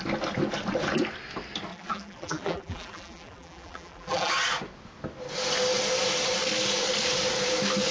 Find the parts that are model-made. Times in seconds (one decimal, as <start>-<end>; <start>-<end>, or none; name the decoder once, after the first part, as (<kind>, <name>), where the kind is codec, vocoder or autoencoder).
1.7-4.3 (vocoder, BigVGAN v2)